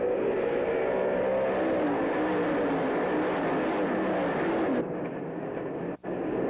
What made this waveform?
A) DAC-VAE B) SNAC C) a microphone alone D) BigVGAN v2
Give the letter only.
C